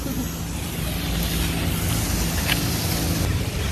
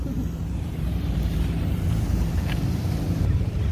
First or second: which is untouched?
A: first